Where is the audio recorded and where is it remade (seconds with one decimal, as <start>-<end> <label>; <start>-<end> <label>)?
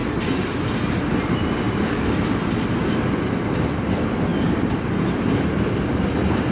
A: 0.0-6.5 recorded